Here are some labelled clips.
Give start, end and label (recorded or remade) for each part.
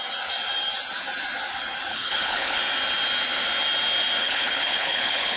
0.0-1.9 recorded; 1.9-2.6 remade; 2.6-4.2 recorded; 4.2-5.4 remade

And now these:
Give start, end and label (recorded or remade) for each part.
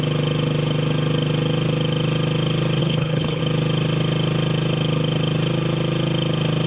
0.0-2.8 recorded; 2.8-3.4 remade; 3.4-6.7 recorded